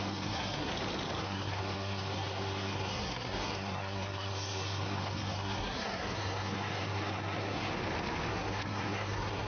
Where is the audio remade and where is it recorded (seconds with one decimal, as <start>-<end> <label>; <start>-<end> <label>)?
0.0-0.7 remade; 0.7-1.2 recorded; 1.2-7.7 remade; 7.7-8.3 recorded; 8.3-9.5 remade